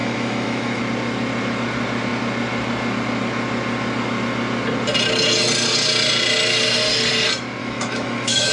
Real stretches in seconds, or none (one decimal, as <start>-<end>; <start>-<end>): 0.8-7.6

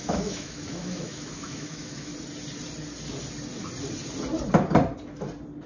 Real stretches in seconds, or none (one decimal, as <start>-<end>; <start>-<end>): 2.1-5.7

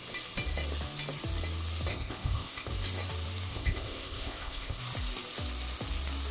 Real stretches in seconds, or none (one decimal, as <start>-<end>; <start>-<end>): 0.0-1.9; 2.7-3.5; 4.8-6.3

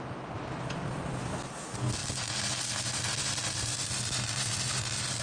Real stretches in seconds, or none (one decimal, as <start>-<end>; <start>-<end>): 0.0-5.2